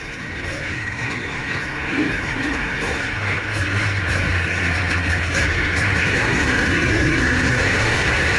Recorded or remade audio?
remade